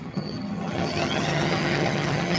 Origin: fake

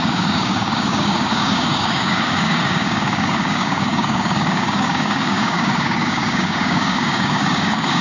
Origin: fake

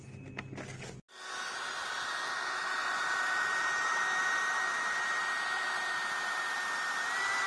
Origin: real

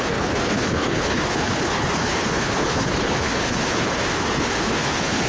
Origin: fake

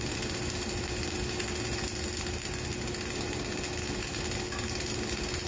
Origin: real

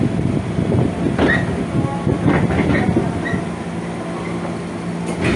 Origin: real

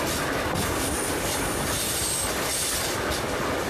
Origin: real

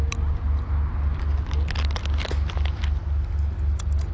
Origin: real